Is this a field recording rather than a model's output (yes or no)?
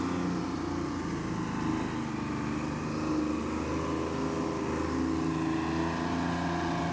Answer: yes